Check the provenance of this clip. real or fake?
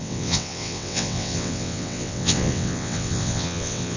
fake